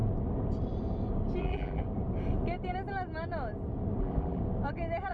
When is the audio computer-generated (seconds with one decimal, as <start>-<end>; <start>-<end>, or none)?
1.4-1.8; 4.0-4.4